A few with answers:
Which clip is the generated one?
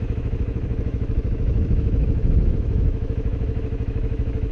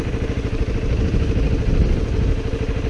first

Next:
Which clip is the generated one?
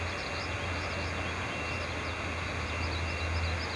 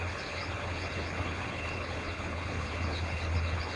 second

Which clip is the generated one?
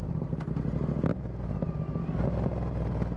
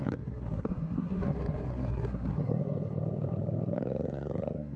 second